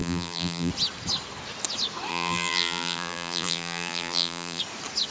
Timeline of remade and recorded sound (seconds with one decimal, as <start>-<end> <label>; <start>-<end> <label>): 0.0-0.7 remade; 0.7-2.1 recorded; 2.1-4.6 remade; 4.6-5.1 recorded